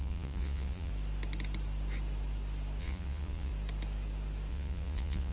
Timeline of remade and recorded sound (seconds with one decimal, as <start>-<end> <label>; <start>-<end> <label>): 0.0-0.9 remade; 0.9-2.8 recorded; 2.8-3.5 remade; 3.5-4.5 recorded; 4.5-5.3 remade